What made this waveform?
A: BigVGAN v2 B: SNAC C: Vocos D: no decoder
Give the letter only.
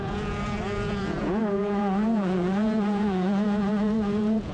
C